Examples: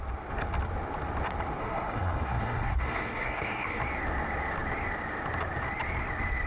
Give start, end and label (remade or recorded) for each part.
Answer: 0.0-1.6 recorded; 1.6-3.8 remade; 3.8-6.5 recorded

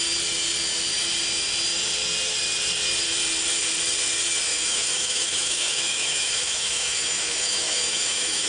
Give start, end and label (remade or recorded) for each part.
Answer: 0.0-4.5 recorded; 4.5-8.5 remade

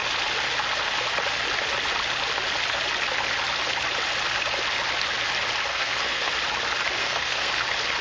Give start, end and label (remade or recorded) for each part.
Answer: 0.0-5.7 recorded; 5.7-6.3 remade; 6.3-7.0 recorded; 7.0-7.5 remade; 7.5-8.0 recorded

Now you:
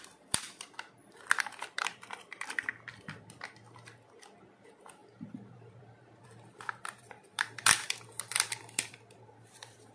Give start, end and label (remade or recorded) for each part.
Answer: 0.0-2.7 remade; 2.7-4.5 recorded; 4.5-9.9 remade

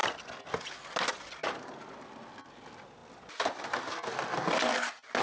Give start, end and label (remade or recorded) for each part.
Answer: 0.0-5.2 recorded

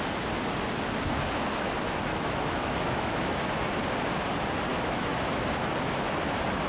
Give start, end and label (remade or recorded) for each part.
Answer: 0.0-2.1 recorded; 2.1-3.5 remade; 3.5-4.7 recorded; 4.7-5.3 remade; 5.3-6.7 recorded

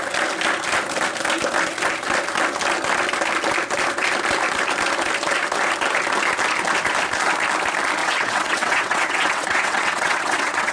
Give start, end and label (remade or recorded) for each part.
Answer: 0.0-8.0 recorded; 8.0-10.7 remade

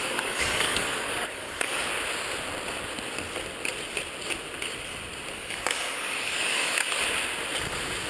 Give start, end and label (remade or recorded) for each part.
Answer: 0.0-1.9 remade; 1.9-5.3 recorded; 5.3-7.0 remade; 7.0-8.1 recorded